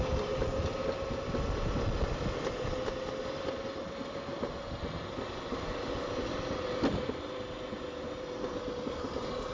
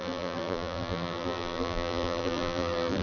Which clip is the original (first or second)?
first